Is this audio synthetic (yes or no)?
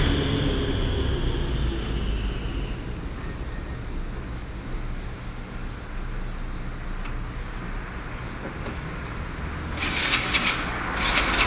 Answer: no